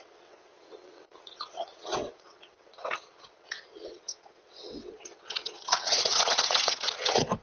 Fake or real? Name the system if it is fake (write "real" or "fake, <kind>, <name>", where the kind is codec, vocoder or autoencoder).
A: fake, vocoder, WaveNeXt